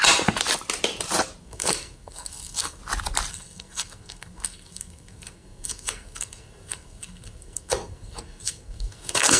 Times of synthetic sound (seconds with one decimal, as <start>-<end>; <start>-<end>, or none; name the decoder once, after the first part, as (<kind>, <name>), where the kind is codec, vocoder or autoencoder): 1.4-2.8 (codec, SNAC); 3.3-9.4